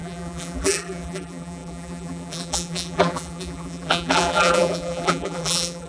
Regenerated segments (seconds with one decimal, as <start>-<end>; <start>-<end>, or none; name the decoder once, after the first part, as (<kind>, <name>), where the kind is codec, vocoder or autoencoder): 0.0-5.9 (vocoder, BigVGAN v2)